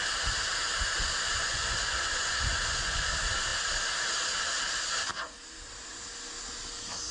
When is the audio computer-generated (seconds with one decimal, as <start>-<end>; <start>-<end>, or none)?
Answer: 1.0-3.1